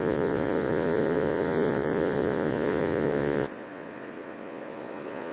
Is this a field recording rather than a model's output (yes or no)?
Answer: no